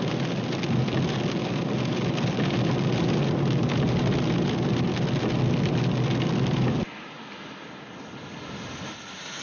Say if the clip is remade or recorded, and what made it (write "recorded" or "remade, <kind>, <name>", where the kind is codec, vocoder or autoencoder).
recorded